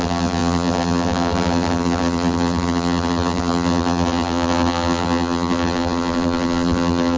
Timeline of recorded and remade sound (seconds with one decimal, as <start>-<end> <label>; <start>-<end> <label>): 0.0-7.2 remade